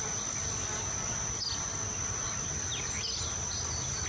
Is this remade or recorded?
recorded